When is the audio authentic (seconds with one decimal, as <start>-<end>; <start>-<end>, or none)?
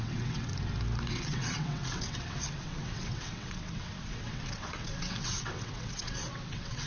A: 0.5-1.1